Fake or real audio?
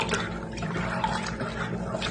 fake